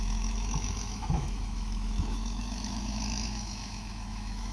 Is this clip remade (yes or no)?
yes